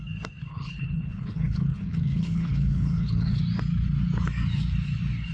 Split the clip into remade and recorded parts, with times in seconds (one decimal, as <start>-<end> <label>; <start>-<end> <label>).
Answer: 0.0-0.5 recorded; 0.5-3.4 remade; 3.4-5.3 recorded